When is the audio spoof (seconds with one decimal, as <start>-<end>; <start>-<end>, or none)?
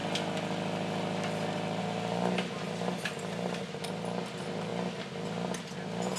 none